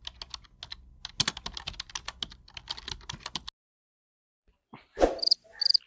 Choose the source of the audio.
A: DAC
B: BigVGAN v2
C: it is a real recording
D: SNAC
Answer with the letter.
C